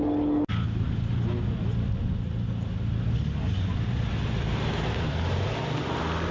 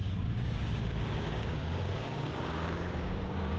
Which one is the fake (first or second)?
second